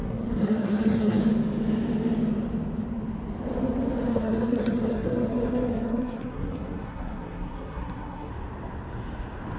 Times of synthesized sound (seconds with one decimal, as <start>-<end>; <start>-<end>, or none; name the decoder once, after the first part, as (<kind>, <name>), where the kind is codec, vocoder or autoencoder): 0.0-1.2 (codec, SNAC); 4.1-8.3